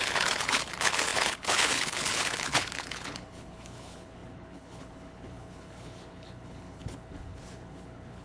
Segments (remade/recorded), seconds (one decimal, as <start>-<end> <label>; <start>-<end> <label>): 0.0-8.2 remade